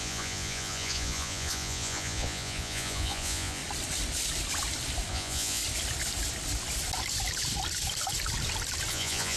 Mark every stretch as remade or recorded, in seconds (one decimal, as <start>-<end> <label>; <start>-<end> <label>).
0.0-3.6 remade; 3.6-5.1 recorded; 5.1-5.6 remade; 5.6-8.9 recorded; 8.9-9.4 remade